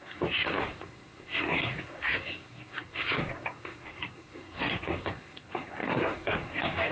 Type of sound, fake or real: fake